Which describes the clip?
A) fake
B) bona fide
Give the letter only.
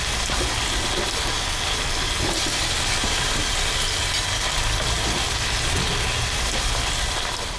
B